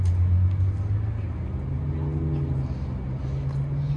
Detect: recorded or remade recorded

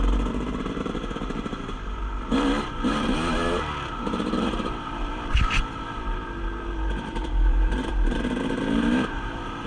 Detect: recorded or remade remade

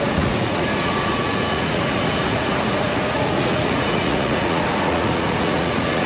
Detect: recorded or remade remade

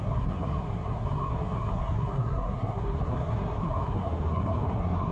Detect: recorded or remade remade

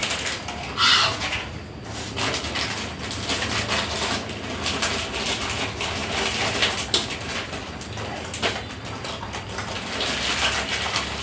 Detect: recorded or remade recorded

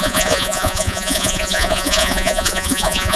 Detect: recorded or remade remade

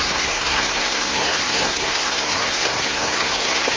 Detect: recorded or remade remade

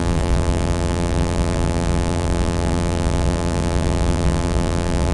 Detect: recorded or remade remade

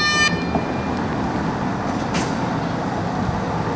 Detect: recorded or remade recorded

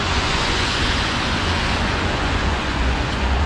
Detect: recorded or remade remade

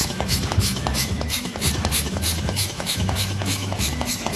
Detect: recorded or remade remade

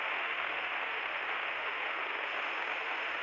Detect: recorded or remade remade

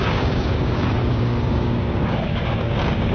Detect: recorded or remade remade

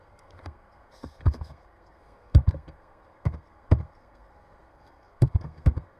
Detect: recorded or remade remade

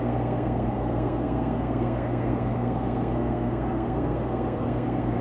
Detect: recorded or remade remade